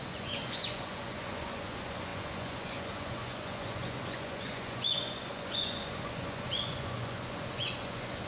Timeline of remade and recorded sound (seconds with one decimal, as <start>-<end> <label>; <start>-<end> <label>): 0.0-8.3 remade